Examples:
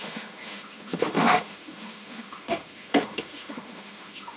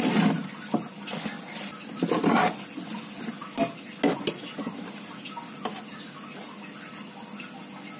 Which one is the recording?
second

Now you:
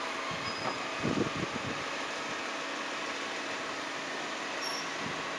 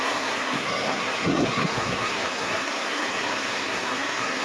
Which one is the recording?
first